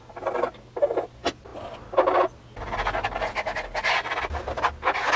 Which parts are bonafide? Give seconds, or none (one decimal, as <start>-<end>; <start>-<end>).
0.0-5.2